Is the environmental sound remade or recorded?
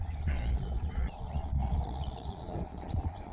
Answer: remade